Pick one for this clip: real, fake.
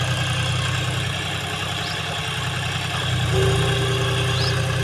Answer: real